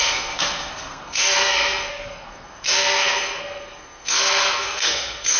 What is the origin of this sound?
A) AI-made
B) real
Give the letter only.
A